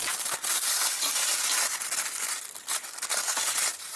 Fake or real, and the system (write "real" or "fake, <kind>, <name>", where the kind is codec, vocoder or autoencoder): real